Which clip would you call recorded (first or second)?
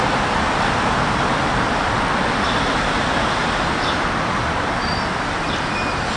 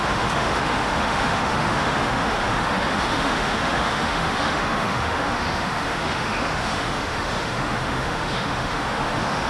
first